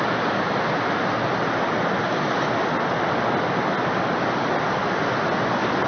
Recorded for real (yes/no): yes